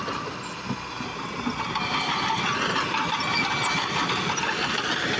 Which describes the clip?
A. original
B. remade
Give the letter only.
A